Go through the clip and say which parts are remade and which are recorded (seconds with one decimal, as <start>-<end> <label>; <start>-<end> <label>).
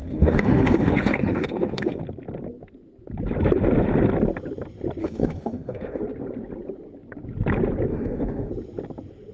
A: 0.0-2.0 remade; 2.0-5.0 recorded; 5.0-6.0 remade; 6.0-7.9 recorded; 7.9-8.5 remade; 8.5-9.3 recorded